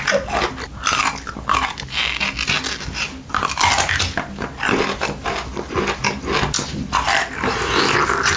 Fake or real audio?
real